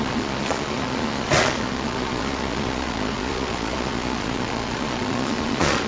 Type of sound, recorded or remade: remade